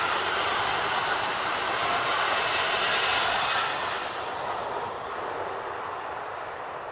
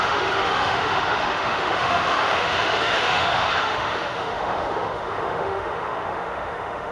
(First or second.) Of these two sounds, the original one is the first